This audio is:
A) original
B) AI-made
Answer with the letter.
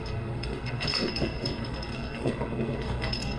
B